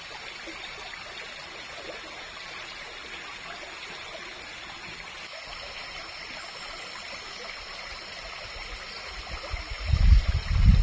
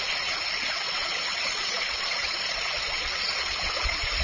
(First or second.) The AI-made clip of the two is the second